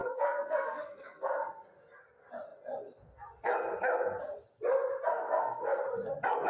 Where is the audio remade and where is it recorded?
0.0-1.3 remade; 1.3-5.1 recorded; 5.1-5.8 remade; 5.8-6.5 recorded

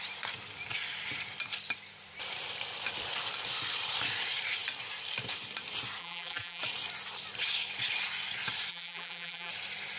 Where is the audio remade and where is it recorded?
0.0-6.0 recorded; 6.0-6.6 remade; 6.6-8.7 recorded; 8.7-9.5 remade; 9.5-10.0 recorded

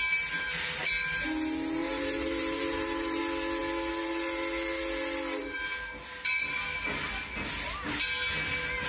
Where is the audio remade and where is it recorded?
0.0-1.8 recorded; 1.8-3.2 remade; 3.2-8.9 recorded

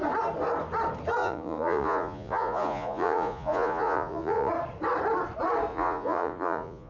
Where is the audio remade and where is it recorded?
0.0-1.2 recorded; 1.2-4.5 remade; 4.5-5.7 recorded; 5.7-6.9 remade

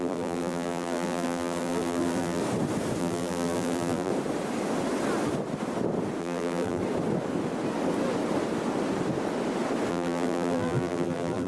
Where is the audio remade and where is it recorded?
0.0-2.4 remade; 2.4-3.0 recorded; 3.0-4.1 remade; 4.1-6.2 recorded; 6.2-6.8 remade; 6.8-9.9 recorded; 9.9-11.5 remade